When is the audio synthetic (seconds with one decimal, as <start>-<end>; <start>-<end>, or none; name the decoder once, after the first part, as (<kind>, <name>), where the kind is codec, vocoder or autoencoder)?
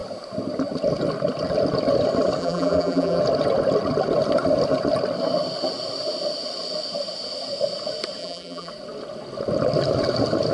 2.4-3.2 (vocoder, BigVGAN v2); 8.2-8.7